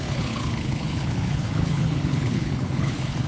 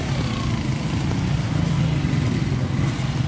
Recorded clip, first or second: second